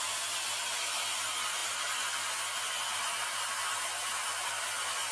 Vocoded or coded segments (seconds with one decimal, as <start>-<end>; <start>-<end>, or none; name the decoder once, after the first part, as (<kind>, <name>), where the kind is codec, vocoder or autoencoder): none